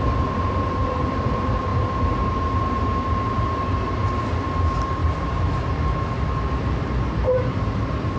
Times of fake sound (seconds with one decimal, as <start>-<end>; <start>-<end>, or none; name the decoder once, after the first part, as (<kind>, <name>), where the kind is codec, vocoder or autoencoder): none